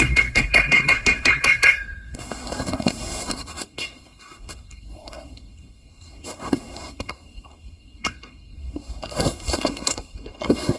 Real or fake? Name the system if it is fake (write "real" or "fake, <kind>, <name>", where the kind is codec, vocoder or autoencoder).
fake, codec, SNAC